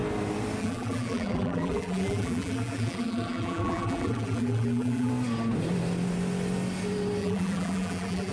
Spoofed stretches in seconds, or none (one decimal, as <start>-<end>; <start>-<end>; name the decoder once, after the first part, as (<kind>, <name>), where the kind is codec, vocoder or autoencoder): 0.6-5.1 (vocoder, BigVGAN v2); 7.2-8.3